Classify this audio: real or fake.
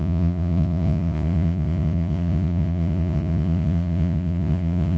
fake